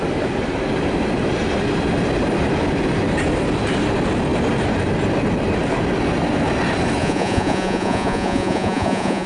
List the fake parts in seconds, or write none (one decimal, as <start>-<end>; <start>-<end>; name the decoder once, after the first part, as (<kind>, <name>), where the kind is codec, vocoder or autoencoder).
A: 7.0-9.3 (vocoder, Vocos)